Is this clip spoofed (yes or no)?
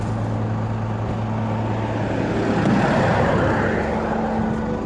no